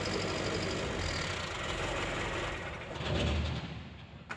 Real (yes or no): yes